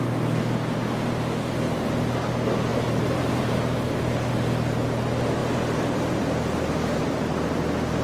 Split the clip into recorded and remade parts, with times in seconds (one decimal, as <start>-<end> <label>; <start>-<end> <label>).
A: 0.0-2.7 recorded; 2.7-4.0 remade; 4.0-8.0 recorded